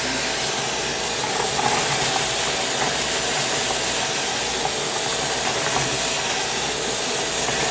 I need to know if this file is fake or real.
real